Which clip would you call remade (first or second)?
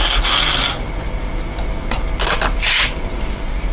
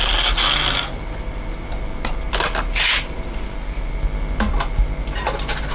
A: first